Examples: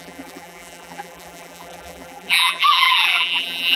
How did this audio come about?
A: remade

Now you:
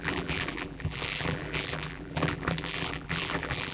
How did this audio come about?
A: remade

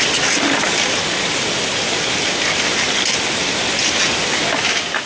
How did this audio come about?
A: recorded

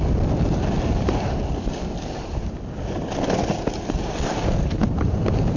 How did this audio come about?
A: recorded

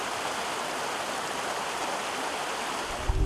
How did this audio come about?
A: remade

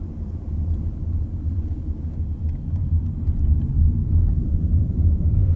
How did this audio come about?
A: remade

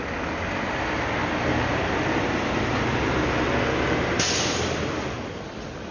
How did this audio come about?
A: recorded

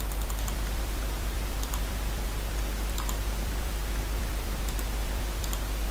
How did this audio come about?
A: remade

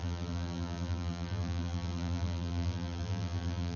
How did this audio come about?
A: remade